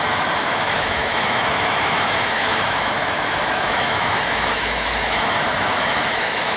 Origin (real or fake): fake